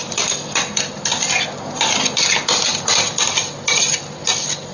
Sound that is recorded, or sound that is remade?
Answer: recorded